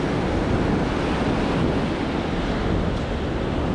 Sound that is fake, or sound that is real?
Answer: real